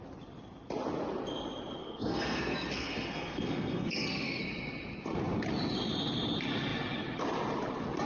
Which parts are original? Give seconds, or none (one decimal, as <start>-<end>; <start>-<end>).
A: 0.0-1.8; 4.4-8.1